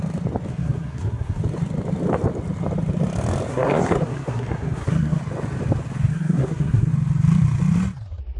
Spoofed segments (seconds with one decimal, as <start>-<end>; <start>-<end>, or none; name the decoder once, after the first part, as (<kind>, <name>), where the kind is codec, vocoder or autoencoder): 0.5-1.4 (codec, SNAC); 3.5-5.2; 6.1-6.9